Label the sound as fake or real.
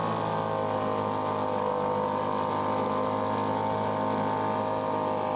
real